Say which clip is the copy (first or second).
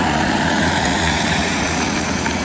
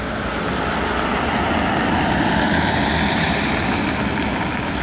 first